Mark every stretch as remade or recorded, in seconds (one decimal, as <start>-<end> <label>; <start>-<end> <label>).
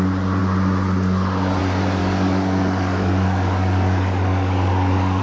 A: 0.0-2.0 recorded; 2.0-5.2 remade